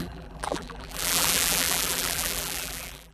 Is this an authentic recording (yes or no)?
no